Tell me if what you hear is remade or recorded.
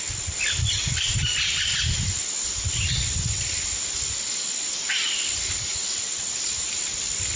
recorded